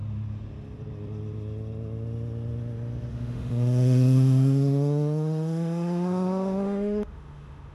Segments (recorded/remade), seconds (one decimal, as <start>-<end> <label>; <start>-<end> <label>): 0.0-3.1 recorded; 3.1-7.7 remade